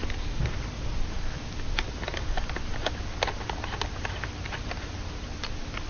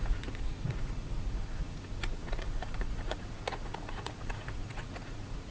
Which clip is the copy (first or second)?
second